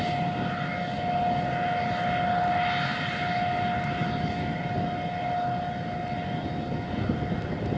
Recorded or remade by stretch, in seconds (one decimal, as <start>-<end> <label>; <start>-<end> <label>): 0.0-7.8 recorded